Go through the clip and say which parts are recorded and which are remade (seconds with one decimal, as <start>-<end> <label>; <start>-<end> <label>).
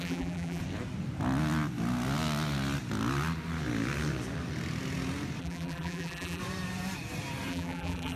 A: 0.0-0.6 remade; 0.6-5.4 recorded; 5.4-6.4 remade; 6.4-7.5 recorded; 7.5-8.2 remade